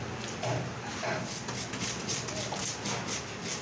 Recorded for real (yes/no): yes